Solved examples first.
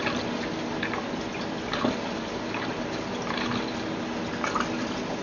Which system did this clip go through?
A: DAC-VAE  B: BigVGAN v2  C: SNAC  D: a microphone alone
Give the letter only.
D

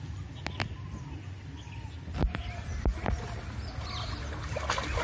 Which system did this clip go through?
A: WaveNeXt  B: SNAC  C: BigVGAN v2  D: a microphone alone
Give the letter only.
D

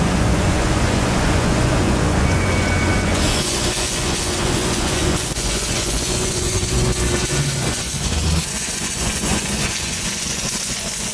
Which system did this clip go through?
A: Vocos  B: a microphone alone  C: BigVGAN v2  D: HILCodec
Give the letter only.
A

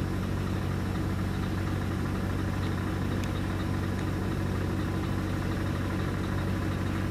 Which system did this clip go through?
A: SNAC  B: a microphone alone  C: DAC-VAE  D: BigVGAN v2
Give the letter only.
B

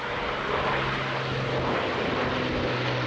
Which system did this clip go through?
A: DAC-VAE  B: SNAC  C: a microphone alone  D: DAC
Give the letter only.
C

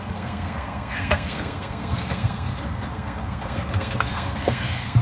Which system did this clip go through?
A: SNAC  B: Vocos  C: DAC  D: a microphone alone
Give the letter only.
A